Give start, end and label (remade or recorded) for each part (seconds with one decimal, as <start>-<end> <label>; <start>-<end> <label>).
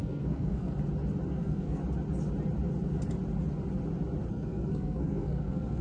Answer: 0.0-0.8 remade; 0.8-1.3 recorded; 1.3-1.8 remade; 1.8-4.3 recorded; 4.3-5.8 remade